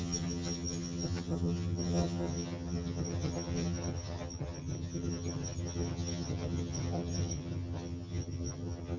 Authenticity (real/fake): fake